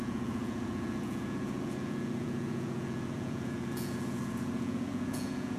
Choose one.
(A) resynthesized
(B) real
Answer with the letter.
A